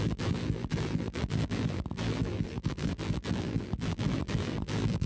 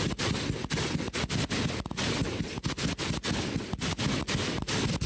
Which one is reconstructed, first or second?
first